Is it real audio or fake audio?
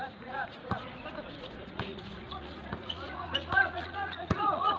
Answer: fake